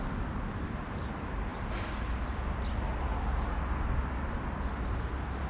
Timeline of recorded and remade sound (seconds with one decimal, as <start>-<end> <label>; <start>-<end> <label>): 0.0-5.5 recorded